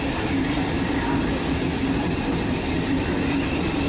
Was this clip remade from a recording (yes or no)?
no